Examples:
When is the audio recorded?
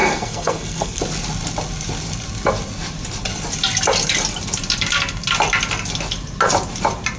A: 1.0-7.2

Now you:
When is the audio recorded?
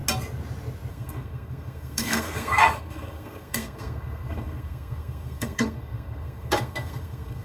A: 0.0-0.9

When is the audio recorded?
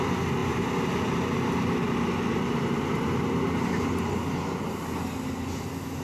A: 0.0-6.0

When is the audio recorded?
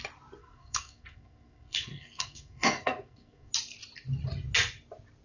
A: 0.0-0.4; 3.5-5.2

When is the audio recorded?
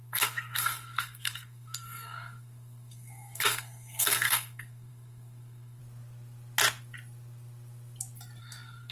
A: 5.8-8.4